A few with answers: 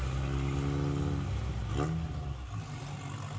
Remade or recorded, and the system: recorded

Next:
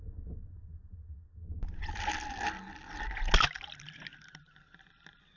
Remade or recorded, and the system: recorded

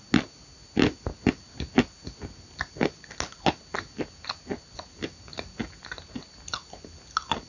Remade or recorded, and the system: recorded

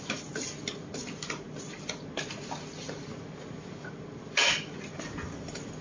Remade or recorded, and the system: recorded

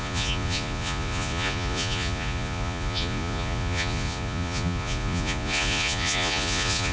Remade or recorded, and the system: remade, vocoder, Vocos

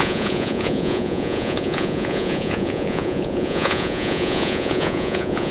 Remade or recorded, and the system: remade, vocoder, Vocos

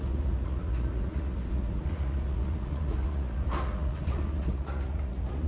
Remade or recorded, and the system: remade, vocoder, Vocos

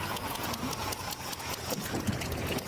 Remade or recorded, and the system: remade, vocoder, Vocos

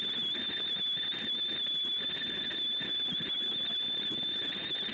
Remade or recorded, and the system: recorded